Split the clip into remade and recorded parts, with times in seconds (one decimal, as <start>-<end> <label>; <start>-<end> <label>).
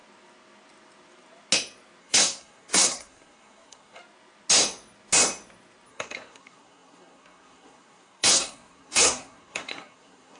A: 0.0-2.0 recorded; 2.0-4.0 remade; 4.0-5.9 recorded; 5.9-10.4 remade